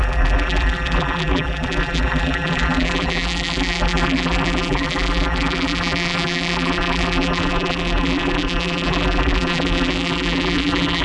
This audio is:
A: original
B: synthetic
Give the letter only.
B